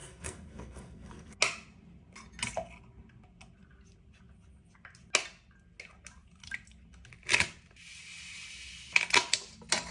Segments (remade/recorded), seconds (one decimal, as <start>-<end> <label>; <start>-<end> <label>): 0.0-1.4 remade; 1.4-9.9 recorded